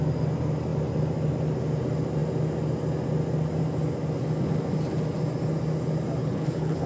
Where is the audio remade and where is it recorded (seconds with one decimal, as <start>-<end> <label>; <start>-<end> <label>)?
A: 0.0-6.2 recorded; 6.2-6.9 remade